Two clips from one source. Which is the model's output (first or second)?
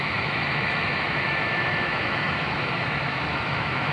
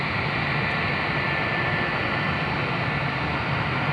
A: first